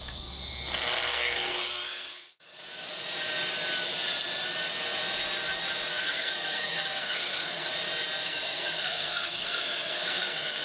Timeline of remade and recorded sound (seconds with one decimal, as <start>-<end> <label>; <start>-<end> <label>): 0.0-0.4 remade; 0.4-1.1 recorded; 1.1-2.5 remade; 2.5-5.9 recorded; 5.9-7.7 remade; 7.7-8.2 recorded; 8.2-10.6 remade

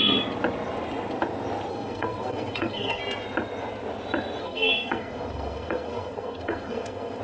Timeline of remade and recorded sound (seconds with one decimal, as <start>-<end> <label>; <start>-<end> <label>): 0.0-1.7 recorded; 1.7-3.0 remade; 3.0-4.4 recorded; 4.4-7.2 remade

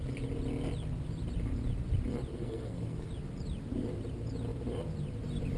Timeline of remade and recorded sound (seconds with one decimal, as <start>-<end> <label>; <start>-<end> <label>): 0.0-2.3 recorded; 2.3-3.1 remade; 3.1-5.6 recorded